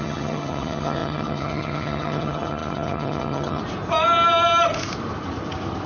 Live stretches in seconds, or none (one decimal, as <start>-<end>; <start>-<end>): 3.6-5.9